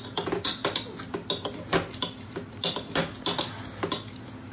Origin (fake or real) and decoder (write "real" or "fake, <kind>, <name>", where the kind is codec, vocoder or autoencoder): real